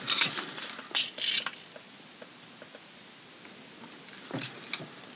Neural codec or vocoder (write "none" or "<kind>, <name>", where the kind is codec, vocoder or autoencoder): none